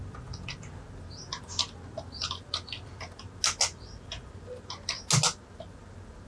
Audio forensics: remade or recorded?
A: recorded